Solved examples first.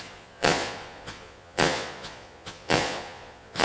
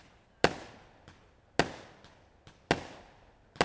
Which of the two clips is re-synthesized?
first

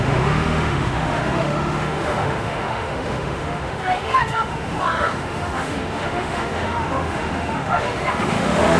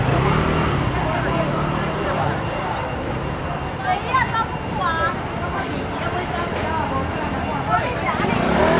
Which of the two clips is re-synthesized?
first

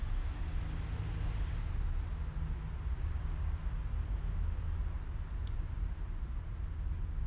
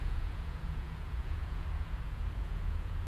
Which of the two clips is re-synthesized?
second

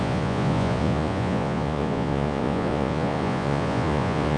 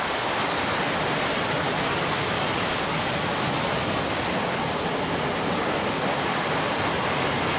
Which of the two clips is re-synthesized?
first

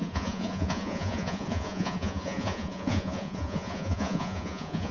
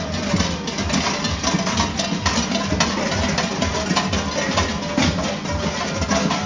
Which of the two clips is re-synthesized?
first